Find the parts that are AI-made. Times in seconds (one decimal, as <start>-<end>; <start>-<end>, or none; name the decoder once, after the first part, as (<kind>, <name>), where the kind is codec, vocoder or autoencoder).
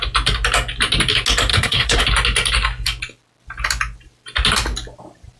1.5-2.0 (codec, SNAC)